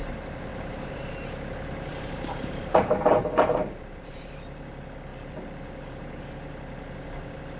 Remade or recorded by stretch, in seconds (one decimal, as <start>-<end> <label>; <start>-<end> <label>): 0.0-0.5 recorded; 0.5-1.1 remade; 1.1-1.9 recorded; 1.9-4.2 remade; 4.2-7.6 recorded